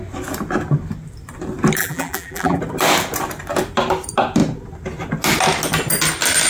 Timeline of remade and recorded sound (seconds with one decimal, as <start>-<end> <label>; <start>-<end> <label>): 0.0-1.8 recorded; 1.8-2.6 remade; 2.6-6.5 recorded